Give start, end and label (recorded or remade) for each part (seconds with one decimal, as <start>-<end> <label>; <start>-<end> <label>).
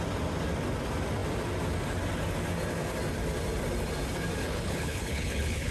0.0-4.4 recorded; 4.4-5.7 remade